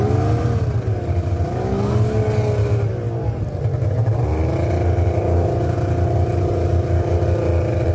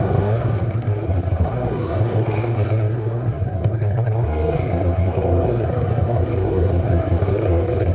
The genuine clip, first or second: first